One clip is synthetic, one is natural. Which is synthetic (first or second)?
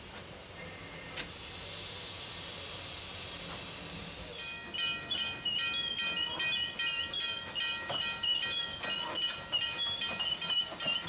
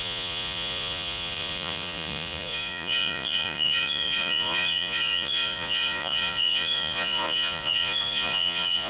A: second